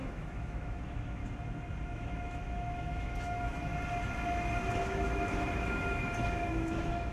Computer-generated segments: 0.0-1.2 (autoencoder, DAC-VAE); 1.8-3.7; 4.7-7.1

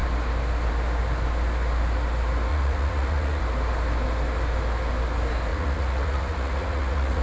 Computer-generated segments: 2.5-3.4 (vocoder, Vocos); 5.5-7.2

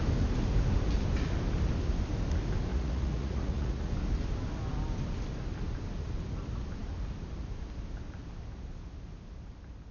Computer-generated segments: 2.7-3.9 (vocoder, Vocos)

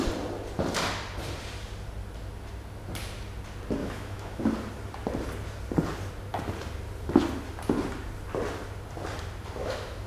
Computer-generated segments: 3.8-4.4 (autoencoder, DAC-VAE); 9.6-10.1

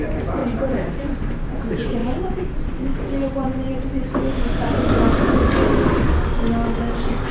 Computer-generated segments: 0.4-1.5 (vocoder, BigVGAN v2)

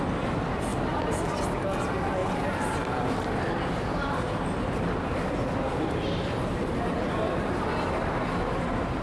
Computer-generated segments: none

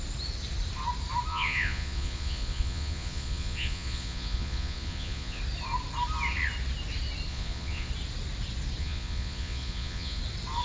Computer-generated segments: 1.3-5.4 (vocoder, Vocos); 7.3-7.9; 8.8-10.2

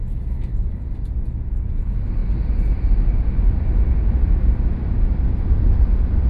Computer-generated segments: none